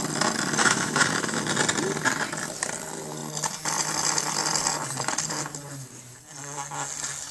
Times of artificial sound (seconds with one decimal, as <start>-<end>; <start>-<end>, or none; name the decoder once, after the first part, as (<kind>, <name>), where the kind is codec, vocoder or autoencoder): 0.6-1.4 (autoencoder, DAC-VAE)